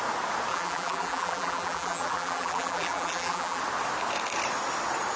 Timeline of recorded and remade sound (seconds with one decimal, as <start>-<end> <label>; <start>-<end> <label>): 0.0-0.5 recorded; 0.5-3.6 remade; 3.6-5.2 recorded